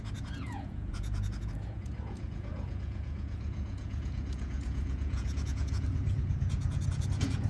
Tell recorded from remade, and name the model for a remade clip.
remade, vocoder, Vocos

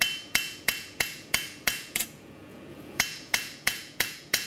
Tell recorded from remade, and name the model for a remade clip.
remade, vocoder, Vocos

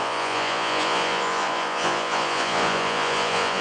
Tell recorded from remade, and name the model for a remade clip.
remade, vocoder, Vocos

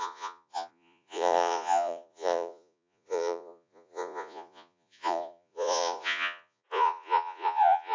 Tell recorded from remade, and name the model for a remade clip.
remade, vocoder, Vocos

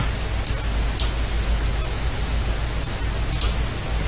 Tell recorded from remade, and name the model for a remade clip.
recorded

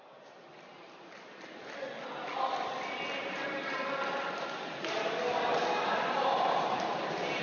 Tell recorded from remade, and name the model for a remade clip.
recorded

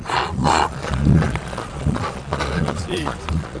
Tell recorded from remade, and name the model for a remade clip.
remade, vocoder, Vocos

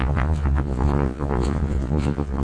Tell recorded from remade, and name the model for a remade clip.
remade, vocoder, Vocos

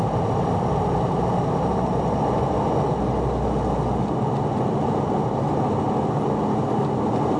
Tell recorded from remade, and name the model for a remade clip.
recorded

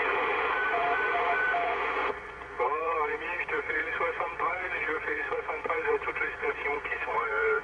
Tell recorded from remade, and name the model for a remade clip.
remade, vocoder, Vocos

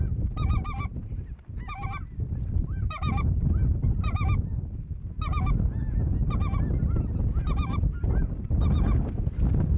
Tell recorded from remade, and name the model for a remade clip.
recorded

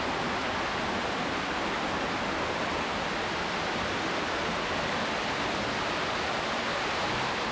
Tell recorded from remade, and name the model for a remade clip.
recorded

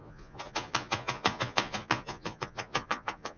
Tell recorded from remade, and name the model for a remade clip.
remade, vocoder, Vocos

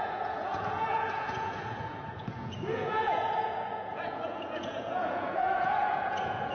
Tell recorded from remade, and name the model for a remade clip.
remade, vocoder, Vocos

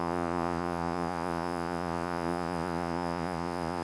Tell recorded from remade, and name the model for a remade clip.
remade, vocoder, Vocos